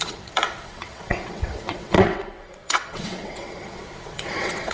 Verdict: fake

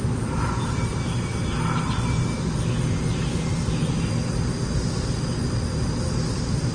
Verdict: real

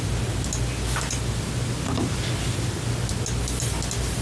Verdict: real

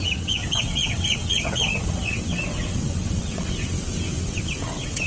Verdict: fake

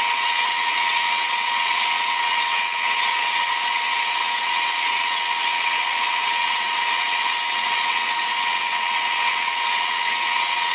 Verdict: fake